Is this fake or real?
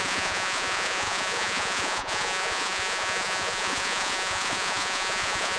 fake